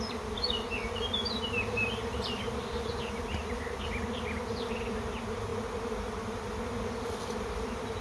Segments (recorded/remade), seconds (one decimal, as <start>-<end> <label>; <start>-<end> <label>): 0.0-8.0 recorded